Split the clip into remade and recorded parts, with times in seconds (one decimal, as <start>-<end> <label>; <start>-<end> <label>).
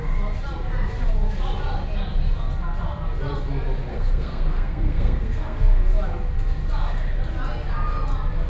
0.0-3.9 recorded; 3.9-5.8 remade; 5.8-8.5 recorded